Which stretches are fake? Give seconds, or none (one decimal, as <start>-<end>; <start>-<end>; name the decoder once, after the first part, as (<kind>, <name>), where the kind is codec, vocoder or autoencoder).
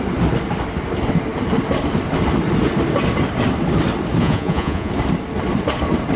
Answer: 4.2-4.9 (vocoder, Vocos)